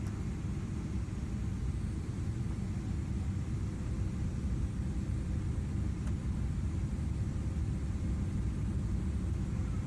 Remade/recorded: recorded